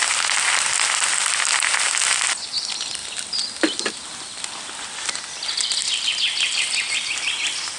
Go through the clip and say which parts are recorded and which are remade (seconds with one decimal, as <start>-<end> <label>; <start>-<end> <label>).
0.0-7.8 recorded